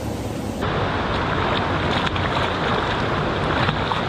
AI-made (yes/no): no